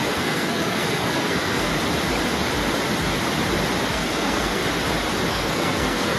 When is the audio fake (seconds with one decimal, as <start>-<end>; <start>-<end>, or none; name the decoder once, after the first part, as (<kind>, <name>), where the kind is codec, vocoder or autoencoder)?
0.0-1.7 (codec, SNAC); 3.9-4.6; 5.3-6.2

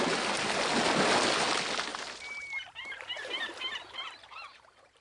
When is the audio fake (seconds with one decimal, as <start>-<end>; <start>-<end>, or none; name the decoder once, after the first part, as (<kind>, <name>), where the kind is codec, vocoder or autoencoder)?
1.9-5.0 (vocoder, BigVGAN v2)

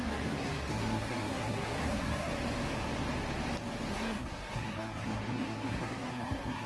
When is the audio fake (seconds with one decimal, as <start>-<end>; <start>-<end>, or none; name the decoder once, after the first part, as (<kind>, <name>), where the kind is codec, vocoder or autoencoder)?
0.0-2.3 (codec, SNAC); 3.9-6.7

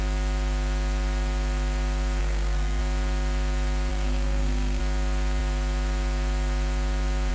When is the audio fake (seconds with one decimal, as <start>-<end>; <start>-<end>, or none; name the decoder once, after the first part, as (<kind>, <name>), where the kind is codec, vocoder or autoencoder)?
2.2-2.8 (codec, SNAC); 3.9-4.8

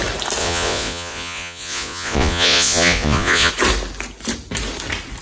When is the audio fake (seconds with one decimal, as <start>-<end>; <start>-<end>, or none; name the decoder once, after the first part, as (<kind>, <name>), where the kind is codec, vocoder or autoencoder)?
0.4-3.5 (vocoder, Vocos)

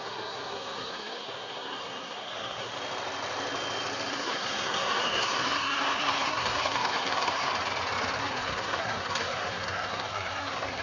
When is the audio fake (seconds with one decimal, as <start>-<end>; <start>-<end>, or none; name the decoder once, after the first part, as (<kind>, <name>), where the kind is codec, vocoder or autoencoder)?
0.0-2.7 (codec, SNAC); 4.1-7.5; 8.2-10.8

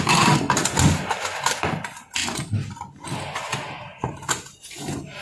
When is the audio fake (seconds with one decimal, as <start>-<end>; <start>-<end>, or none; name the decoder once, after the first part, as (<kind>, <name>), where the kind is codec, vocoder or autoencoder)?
none

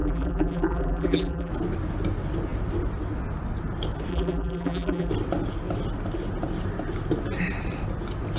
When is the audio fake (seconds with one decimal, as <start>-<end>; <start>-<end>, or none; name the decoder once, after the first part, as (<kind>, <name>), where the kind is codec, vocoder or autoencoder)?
0.0-1.5 (vocoder, BigVGAN v2); 4.1-5.1